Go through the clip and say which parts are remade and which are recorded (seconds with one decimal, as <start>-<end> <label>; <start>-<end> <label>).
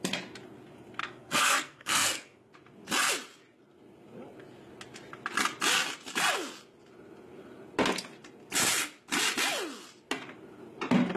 0.0-1.0 recorded; 1.0-2.5 remade; 2.5-11.2 recorded